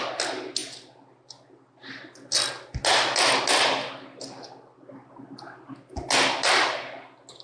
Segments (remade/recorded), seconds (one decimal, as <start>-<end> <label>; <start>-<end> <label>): 0.0-7.4 recorded